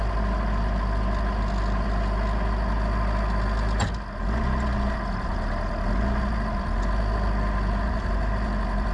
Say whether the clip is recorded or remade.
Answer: recorded